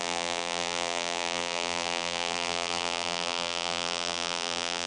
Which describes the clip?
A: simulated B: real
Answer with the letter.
A